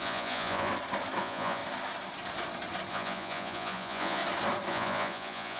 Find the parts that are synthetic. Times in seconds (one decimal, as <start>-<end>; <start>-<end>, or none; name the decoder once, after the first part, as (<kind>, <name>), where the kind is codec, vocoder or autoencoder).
0.0-0.7 (vocoder, Vocos); 1.2-1.6; 2.9-4.2; 4.7-5.6